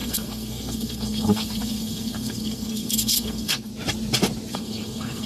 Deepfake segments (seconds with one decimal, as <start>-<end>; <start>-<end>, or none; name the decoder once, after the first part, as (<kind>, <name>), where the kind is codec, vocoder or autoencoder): 0.0-3.7 (codec, SNAC); 4.5-5.3